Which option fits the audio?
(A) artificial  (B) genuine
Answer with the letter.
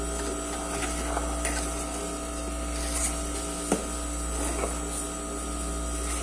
B